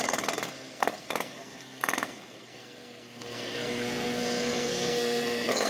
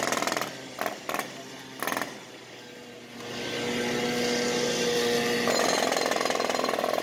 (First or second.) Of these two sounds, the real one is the second